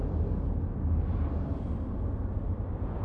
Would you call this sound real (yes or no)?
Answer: yes